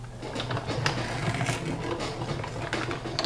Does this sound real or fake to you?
real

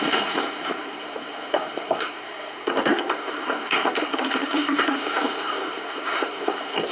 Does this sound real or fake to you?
fake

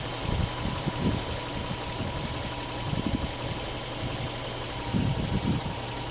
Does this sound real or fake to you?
real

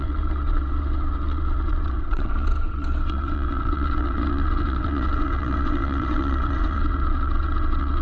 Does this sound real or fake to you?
fake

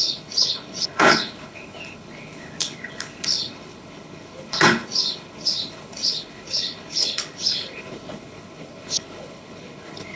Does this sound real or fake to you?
fake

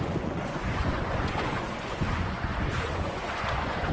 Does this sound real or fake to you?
fake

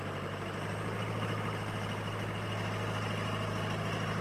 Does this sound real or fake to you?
real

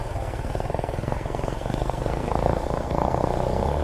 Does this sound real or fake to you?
fake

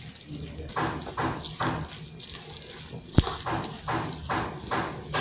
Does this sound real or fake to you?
real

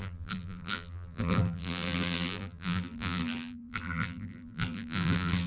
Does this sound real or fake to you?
fake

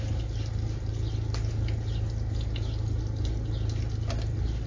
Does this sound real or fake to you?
real